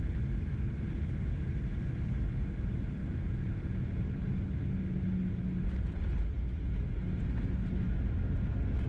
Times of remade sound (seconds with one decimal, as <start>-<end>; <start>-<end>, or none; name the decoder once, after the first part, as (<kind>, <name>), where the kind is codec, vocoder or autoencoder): 3.0-4.0 (vocoder, Vocos)

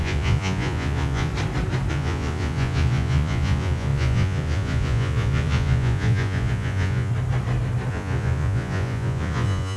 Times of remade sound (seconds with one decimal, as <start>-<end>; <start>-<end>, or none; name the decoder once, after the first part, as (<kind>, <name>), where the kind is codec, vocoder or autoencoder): 0.0-1.3 (vocoder, Vocos); 1.9-7.1; 7.9-9.8

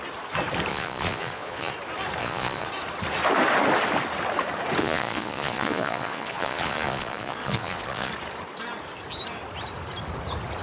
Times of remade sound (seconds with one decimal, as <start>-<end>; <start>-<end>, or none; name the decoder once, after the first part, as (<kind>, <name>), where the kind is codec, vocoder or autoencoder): 0.7-1.7 (vocoder, Vocos); 2.2-2.7; 4.8-8.1

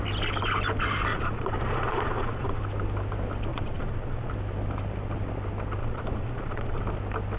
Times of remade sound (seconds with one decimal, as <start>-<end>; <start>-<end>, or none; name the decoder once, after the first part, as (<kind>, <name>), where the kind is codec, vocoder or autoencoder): 1.1-2.6 (vocoder, Vocos); 3.5-4.3; 5.8-6.8

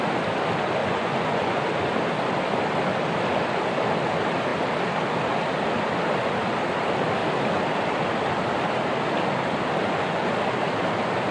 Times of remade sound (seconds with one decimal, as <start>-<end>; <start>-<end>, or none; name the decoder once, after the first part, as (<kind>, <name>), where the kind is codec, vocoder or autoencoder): 0.8-1.6 (vocoder, Vocos); 9.8-10.3